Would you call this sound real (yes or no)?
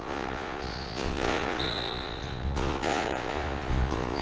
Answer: no